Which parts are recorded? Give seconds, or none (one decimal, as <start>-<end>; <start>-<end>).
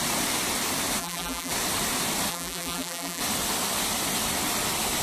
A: 0.0-1.0; 1.5-2.3; 3.2-5.0